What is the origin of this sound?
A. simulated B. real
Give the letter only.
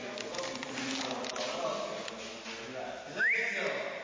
B